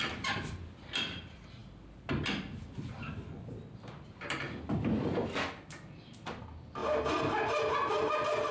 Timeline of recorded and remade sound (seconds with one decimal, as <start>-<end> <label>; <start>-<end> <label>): 0.0-1.6 remade; 1.6-2.8 recorded; 2.8-6.8 remade; 6.8-8.5 recorded